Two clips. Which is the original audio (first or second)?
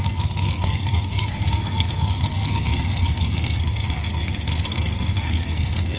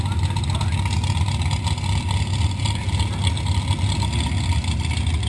second